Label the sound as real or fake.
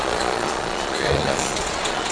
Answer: fake